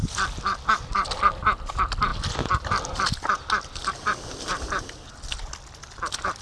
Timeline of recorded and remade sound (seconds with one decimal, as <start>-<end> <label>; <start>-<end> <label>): 0.0-6.4 recorded

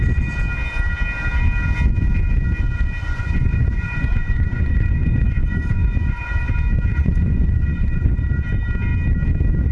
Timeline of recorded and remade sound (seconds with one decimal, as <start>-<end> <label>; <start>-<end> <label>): 0.0-3.0 recorded; 3.0-6.5 remade; 6.5-6.9 recorded; 6.9-8.1 remade; 8.1-9.7 recorded

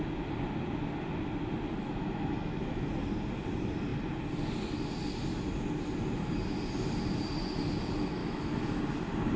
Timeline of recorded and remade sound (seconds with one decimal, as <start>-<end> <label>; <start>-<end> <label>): 0.0-1.8 recorded; 1.8-2.9 remade; 2.9-8.2 recorded; 8.2-8.8 remade; 8.8-9.4 recorded